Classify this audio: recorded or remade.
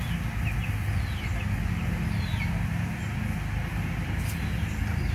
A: recorded